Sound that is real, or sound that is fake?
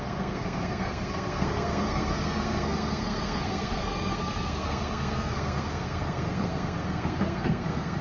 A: fake